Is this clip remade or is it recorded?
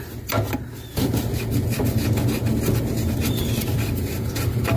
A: recorded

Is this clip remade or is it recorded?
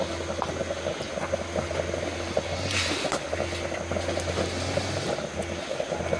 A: recorded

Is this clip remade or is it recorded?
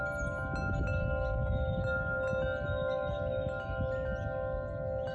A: recorded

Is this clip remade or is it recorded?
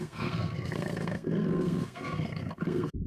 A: remade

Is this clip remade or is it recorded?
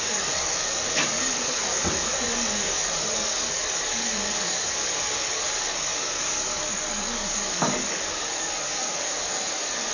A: remade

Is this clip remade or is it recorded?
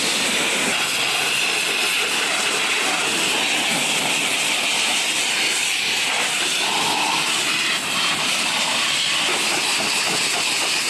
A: recorded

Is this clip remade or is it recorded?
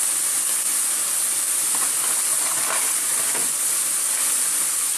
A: recorded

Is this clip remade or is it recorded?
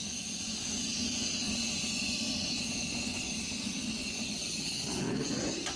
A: remade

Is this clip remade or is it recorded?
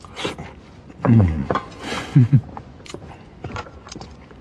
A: remade